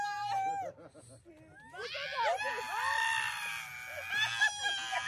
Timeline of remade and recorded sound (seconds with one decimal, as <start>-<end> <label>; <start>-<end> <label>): 0.0-5.1 recorded